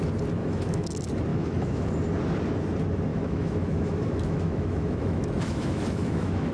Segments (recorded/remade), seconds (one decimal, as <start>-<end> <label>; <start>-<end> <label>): 0.0-0.4 recorded; 0.4-0.9 remade; 0.9-1.3 recorded; 1.3-1.9 remade; 1.9-3.1 recorded; 3.1-6.5 remade